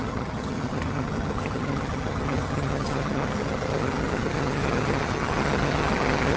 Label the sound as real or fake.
fake